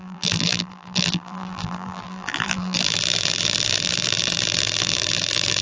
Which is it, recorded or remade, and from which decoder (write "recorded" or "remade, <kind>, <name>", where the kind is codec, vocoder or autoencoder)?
remade, vocoder, BigVGAN v2